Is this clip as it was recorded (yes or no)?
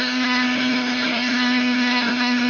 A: no